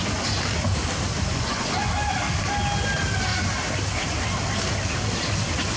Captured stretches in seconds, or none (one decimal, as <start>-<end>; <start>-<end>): 0.0-1.3; 1.9-5.8